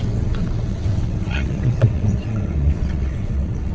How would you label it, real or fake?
fake